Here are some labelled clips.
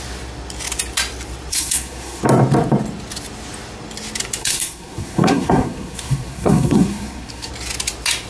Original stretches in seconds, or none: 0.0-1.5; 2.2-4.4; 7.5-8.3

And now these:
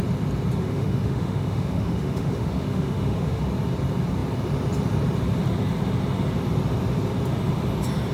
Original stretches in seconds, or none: 0.0-0.6; 3.4-8.1

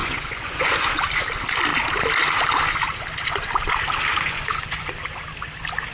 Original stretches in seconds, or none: 1.0-4.1; 4.9-5.9

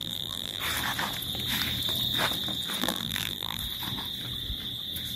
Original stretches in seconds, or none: 0.6-2.8; 3.6-5.2

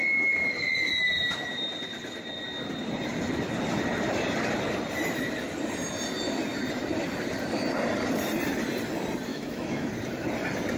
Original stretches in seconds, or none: 0.0-9.3; 9.9-10.8

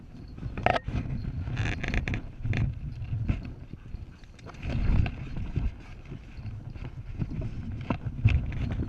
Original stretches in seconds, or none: 0.0-8.9

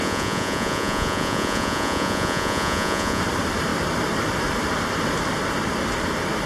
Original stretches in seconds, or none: 3.2-6.5

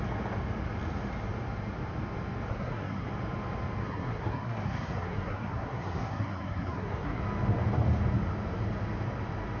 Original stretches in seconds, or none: 0.0-2.5; 3.1-3.8; 7.2-9.6